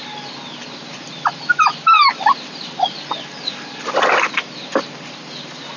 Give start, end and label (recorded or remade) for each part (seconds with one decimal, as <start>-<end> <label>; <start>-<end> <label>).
0.0-5.8 recorded